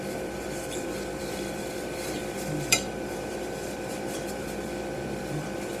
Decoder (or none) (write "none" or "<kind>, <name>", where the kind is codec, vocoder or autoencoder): vocoder, BigVGAN v2